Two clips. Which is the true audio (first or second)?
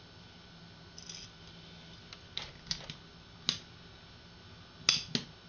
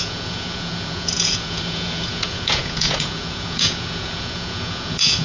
first